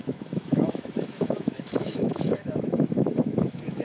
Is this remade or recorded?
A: remade